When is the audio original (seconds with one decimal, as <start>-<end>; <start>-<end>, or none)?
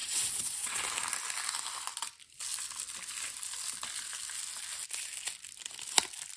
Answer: 0.8-6.4